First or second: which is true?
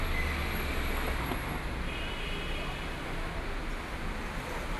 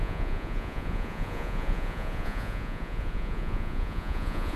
first